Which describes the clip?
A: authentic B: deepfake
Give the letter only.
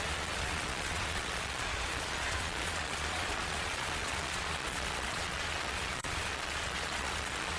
B